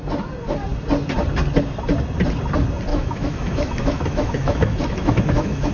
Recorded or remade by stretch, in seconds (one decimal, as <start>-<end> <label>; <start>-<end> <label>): 0.0-2.9 recorded; 2.9-5.7 remade